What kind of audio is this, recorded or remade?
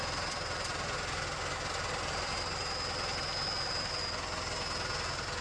recorded